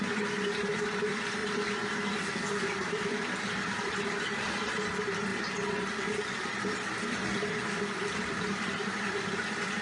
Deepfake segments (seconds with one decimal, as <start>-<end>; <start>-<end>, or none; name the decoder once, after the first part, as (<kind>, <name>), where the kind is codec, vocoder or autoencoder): 0.0-1.4 (vocoder, BigVGAN v2); 2.6-9.8